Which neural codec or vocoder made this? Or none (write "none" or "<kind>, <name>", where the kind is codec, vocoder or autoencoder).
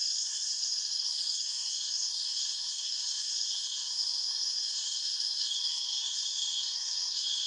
codec, SNAC